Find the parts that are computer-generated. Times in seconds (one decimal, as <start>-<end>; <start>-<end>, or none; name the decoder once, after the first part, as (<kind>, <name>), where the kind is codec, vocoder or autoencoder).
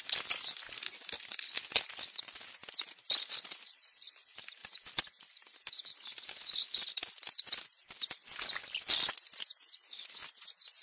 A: none